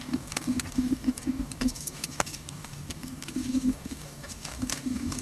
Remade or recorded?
remade